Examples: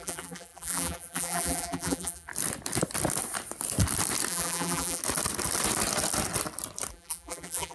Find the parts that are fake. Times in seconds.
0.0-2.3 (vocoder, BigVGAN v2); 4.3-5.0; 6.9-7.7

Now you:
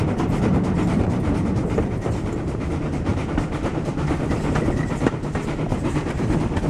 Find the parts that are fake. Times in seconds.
0.9-2.7 (vocoder, BigVGAN v2); 3.1-3.9; 5.7-6.3

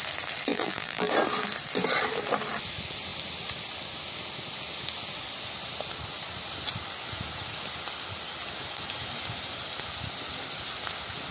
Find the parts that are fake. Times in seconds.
0.5-1.1 (vocoder, BigVGAN v2)

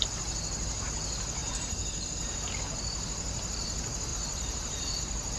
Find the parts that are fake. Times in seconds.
1.4-2.1 (vocoder, BigVGAN v2); 4.1-5.0

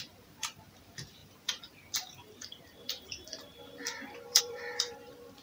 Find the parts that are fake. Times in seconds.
0.0-5.4 (vocoder, BigVGAN v2)